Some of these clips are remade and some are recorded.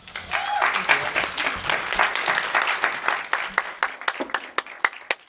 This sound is recorded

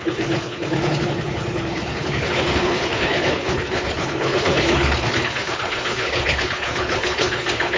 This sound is remade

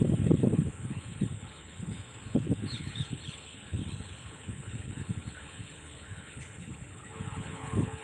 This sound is remade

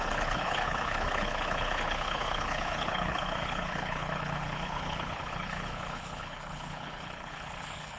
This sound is remade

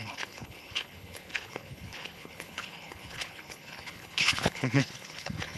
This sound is remade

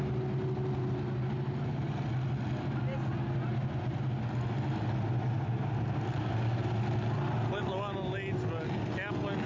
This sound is recorded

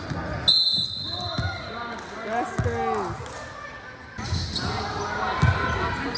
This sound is recorded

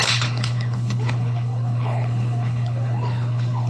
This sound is remade